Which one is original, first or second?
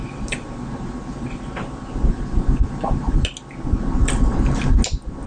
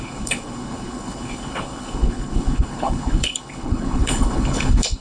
first